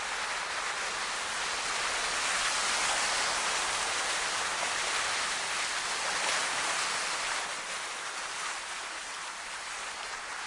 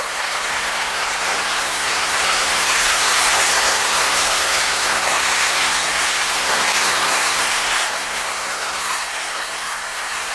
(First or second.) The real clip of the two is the first